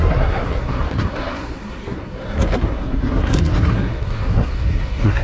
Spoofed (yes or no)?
yes